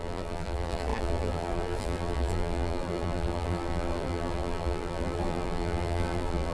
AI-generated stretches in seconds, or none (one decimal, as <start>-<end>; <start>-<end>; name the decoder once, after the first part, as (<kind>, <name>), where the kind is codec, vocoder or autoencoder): 0.0-6.5 (vocoder, BigVGAN v2)